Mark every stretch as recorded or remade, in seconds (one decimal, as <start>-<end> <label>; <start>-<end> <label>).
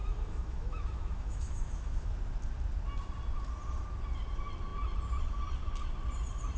0.0-2.1 remade; 2.1-6.6 recorded